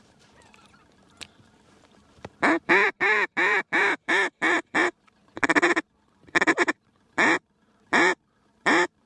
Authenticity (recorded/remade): remade